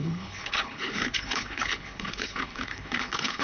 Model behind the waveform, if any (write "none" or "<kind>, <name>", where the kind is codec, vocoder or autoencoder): codec, HILCodec